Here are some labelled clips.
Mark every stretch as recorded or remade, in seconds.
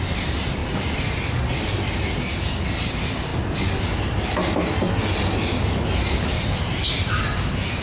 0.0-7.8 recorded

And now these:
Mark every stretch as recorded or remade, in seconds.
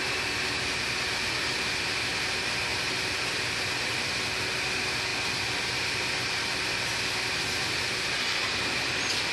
0.0-9.3 recorded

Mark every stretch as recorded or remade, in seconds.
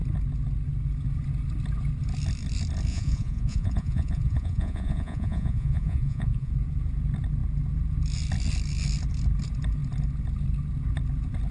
0.0-2.9 recorded; 2.9-6.5 remade; 6.5-11.5 recorded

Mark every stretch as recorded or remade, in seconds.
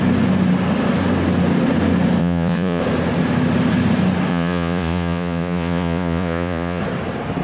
0.0-2.2 recorded; 2.2-2.8 remade; 2.8-4.3 recorded; 4.3-6.8 remade; 6.8-7.4 recorded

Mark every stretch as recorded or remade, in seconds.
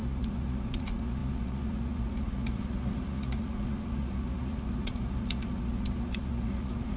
0.0-7.0 remade